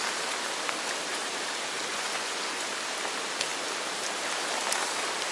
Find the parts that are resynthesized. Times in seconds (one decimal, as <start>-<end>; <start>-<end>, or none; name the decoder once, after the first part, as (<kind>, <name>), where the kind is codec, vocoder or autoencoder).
1.9-2.7 (vocoder, Vocos)